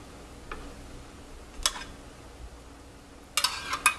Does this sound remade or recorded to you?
recorded